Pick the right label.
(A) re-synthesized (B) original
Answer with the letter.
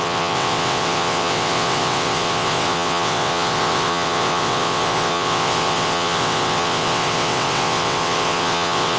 A